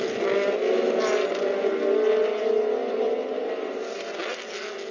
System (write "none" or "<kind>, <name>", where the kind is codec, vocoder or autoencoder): none